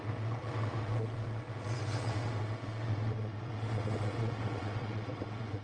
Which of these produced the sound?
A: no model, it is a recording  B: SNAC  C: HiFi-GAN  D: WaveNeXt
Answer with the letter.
D